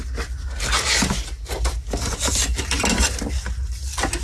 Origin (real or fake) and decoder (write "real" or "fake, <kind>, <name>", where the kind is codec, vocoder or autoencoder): real